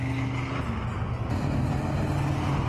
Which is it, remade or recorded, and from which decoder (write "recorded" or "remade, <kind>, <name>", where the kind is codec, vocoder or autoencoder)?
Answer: recorded